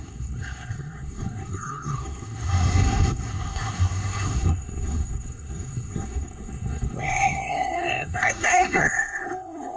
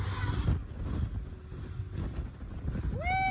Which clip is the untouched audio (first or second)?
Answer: second